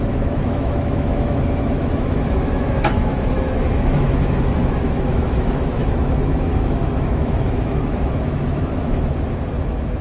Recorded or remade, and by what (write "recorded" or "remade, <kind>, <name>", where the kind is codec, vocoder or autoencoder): remade, autoencoder, DAC-VAE